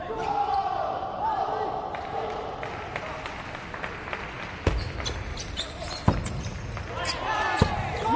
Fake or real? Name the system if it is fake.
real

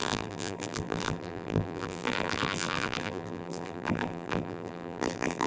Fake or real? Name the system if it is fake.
fake, vocoder, BigVGAN v2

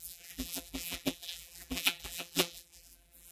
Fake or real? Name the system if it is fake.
fake, vocoder, BigVGAN v2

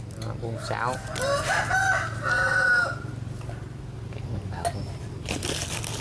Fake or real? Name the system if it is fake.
real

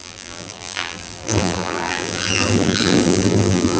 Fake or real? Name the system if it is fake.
fake, vocoder, BigVGAN v2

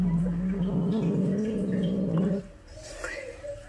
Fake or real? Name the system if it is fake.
real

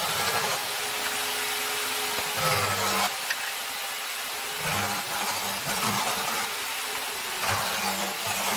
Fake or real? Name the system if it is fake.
real